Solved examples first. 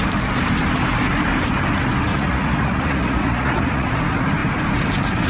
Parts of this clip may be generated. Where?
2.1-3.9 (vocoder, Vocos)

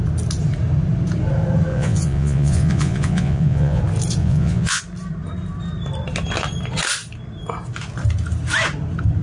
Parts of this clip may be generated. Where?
1.7-3.8 (vocoder, Vocos); 4.2-4.8

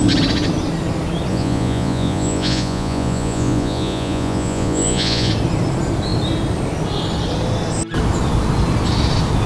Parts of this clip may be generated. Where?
1.3-5.3 (vocoder, Vocos)

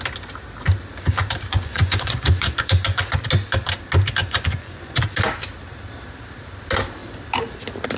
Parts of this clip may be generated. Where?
1.5-3.0 (vocoder, Vocos); 4.2-5.0

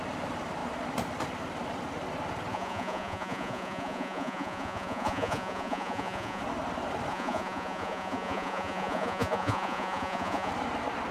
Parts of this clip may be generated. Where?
2.5-6.4 (vocoder, Vocos); 7.1-10.5

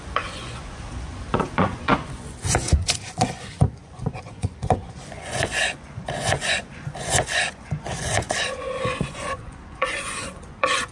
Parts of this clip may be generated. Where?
0.0-10.9 (vocoder, Vocos)

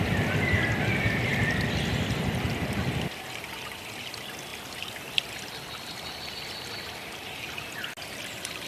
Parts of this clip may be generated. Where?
none